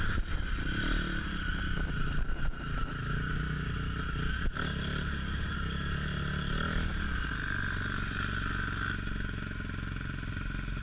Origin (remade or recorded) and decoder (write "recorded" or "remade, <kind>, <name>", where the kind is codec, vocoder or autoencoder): recorded